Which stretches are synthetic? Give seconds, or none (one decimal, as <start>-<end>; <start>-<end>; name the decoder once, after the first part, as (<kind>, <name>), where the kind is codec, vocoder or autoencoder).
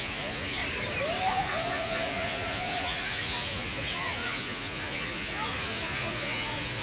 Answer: 0.0-0.6 (vocoder, Vocos); 1.3-6.8